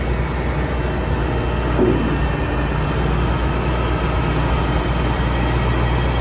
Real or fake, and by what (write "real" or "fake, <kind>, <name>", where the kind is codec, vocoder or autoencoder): real